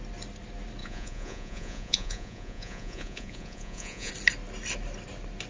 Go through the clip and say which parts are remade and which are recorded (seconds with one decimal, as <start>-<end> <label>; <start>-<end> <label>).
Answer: 0.0-0.8 recorded; 0.8-4.1 remade; 4.1-5.5 recorded